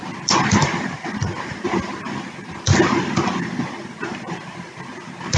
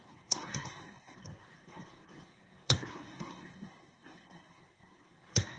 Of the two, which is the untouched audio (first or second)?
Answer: first